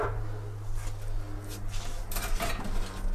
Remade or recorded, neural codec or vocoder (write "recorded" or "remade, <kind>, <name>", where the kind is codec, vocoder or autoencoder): recorded